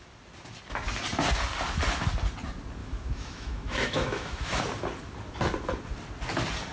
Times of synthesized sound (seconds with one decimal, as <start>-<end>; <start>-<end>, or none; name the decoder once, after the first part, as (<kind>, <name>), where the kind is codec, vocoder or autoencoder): 2.8-4.6 (autoencoder, DAC-VAE)